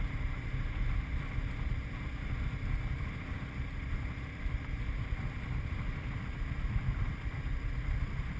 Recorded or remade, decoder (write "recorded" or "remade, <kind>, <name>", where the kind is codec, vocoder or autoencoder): recorded